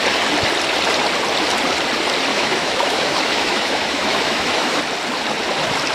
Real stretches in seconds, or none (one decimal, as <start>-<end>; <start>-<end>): 0.0-2.3; 4.8-5.9